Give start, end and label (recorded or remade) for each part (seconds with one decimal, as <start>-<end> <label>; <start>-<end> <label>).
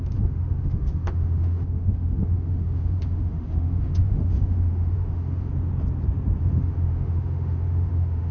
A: 0.0-5.5 remade; 5.5-6.4 recorded; 6.4-8.3 remade